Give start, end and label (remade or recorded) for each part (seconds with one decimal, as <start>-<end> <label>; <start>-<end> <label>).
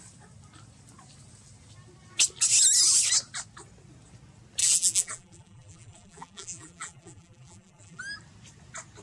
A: 0.0-4.6 recorded; 4.6-8.0 remade; 8.0-9.0 recorded